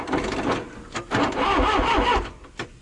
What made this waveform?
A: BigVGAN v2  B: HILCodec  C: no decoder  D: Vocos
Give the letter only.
C